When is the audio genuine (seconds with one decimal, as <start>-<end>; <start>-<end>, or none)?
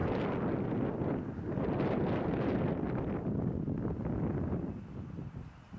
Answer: 0.0-5.8